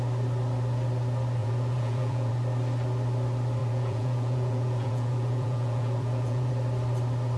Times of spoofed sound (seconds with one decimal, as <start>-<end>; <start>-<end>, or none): 1.4-2.3; 3.6-6.5